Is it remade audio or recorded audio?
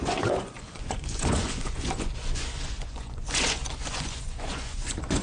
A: remade